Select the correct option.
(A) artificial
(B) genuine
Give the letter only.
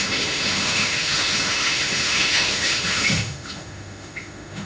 A